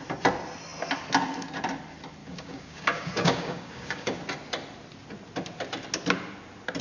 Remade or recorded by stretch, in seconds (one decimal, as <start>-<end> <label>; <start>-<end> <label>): 0.0-2.2 recorded; 2.2-4.2 remade; 4.2-6.8 recorded